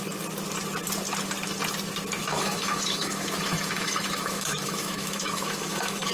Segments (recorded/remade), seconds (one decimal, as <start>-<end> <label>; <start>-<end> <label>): 0.0-2.2 recorded; 2.2-6.1 remade